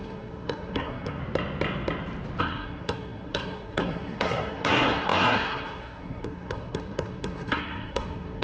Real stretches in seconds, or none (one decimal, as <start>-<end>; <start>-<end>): 1.2-2.4